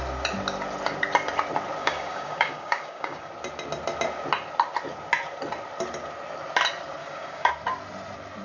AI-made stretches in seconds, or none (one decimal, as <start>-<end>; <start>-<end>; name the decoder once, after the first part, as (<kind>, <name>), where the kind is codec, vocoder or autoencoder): 1.8-3.3 (codec, DAC); 7.0-7.5

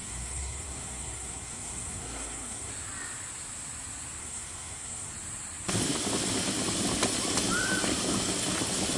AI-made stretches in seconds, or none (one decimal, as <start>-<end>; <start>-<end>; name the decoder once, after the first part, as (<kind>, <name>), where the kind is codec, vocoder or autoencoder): 0.0-2.7 (codec, SNAC); 4.2-5.1

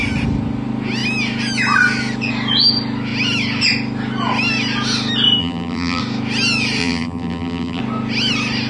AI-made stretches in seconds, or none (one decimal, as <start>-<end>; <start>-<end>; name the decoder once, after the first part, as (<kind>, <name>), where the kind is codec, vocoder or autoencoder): 5.4-6.0 (vocoder, BigVGAN v2); 6.8-7.8